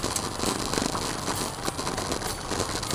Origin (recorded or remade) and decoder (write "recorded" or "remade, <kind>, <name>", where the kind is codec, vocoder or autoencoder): recorded